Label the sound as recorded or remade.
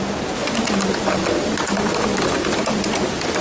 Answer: recorded